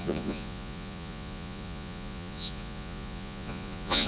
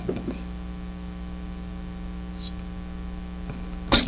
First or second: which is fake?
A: first